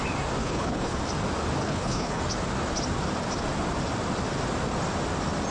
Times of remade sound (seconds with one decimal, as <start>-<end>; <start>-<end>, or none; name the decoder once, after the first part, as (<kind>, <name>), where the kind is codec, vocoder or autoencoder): 0.4-1.0 (codec, HILCodec); 1.6-2.2